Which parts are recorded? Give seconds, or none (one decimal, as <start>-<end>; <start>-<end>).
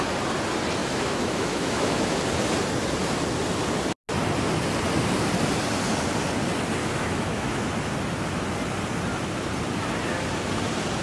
0.0-0.8; 2.2-6.8; 7.7-11.0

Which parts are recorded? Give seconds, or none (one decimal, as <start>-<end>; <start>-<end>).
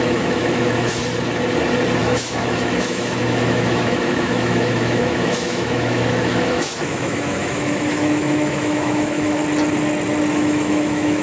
1.0-2.0; 9.4-10.3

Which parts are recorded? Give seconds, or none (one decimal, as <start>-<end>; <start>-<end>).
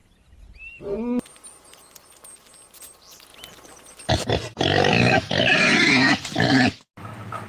0.0-7.5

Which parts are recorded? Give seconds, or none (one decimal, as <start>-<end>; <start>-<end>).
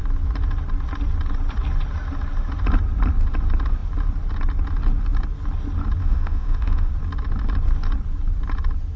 0.0-6.0; 6.9-9.0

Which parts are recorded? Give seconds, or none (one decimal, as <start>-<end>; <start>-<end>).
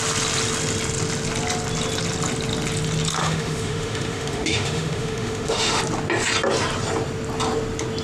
0.0-3.2; 5.8-8.0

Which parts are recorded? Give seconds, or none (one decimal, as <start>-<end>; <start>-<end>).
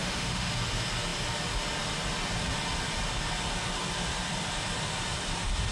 0.5-5.7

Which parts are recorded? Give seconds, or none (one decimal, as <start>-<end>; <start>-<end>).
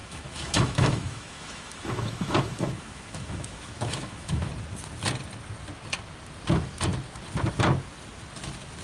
4.5-8.8